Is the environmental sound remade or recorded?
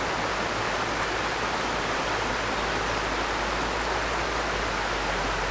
recorded